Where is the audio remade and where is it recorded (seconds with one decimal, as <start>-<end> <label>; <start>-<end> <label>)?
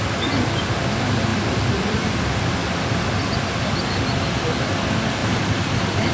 0.0-1.3 recorded; 1.3-3.0 remade; 3.0-5.2 recorded; 5.2-6.1 remade